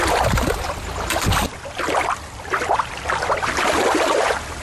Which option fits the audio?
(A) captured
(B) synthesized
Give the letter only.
B